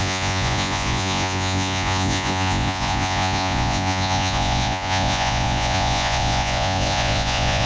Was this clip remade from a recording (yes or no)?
yes